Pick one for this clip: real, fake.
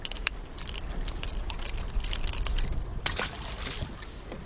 real